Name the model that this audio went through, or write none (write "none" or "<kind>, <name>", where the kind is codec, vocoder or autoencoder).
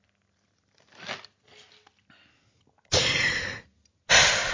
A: none